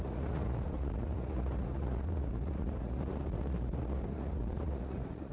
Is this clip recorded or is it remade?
remade